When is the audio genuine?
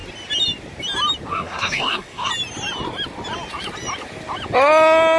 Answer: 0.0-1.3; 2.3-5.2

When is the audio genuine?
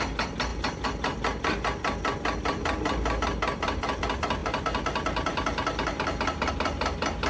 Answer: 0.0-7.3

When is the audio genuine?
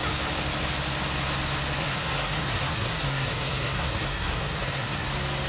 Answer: 0.0-1.8; 5.1-5.5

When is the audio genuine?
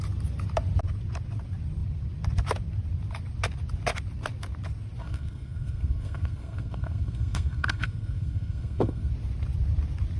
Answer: 0.0-5.0; 9.1-10.2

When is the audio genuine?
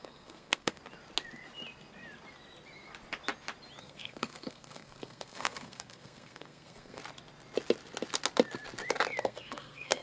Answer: 0.8-3.8; 7.0-9.2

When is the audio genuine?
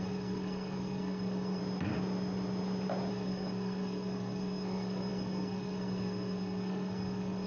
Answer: 1.6-3.1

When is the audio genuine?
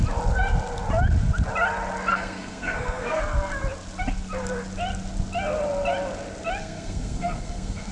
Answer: 0.0-2.1; 3.2-6.6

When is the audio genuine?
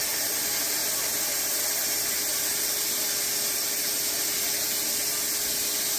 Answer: 0.0-6.0